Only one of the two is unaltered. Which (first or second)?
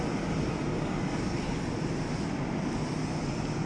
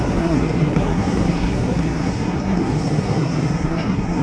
first